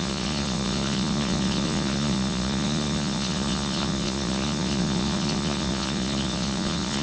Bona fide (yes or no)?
no